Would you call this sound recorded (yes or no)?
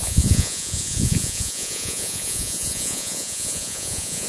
no